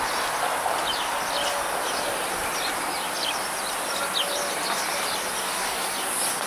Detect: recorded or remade recorded